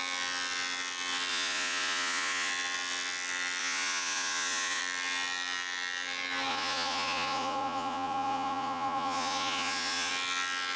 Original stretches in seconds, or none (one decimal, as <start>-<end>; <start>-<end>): 0.0-1.3; 2.5-3.6; 4.8-6.5; 10.1-10.8